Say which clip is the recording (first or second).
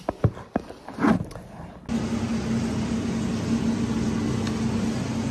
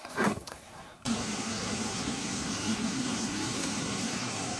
first